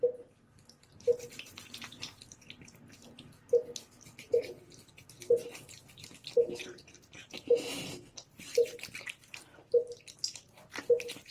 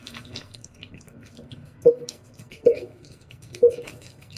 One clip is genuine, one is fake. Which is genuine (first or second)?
first